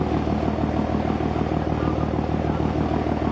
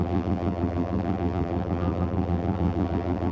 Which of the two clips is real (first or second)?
first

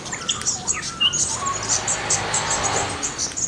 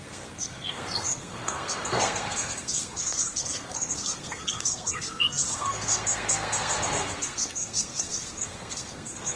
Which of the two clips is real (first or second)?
first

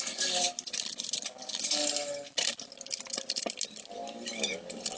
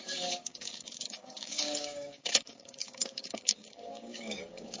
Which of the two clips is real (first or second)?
first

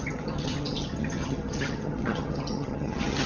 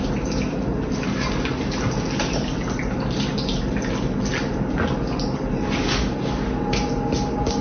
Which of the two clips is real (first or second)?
second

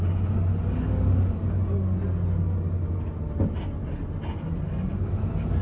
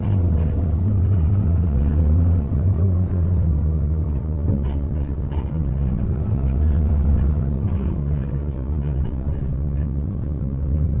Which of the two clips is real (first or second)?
first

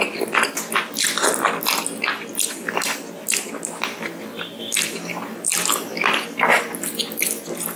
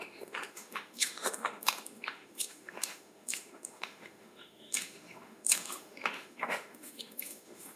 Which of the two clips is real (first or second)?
first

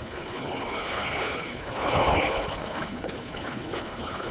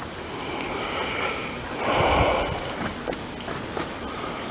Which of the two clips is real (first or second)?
second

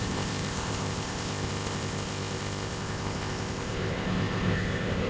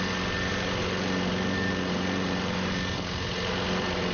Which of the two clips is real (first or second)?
second